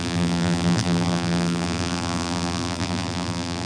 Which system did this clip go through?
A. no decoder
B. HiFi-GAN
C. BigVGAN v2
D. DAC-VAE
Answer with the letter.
C